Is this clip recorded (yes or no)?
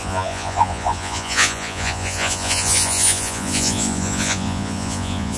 no